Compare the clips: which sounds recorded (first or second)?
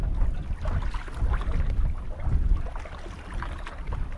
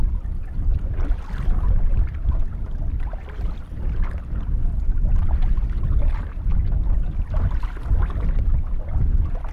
first